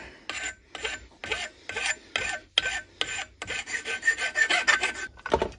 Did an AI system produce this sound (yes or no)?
no